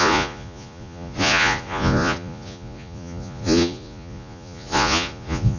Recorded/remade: remade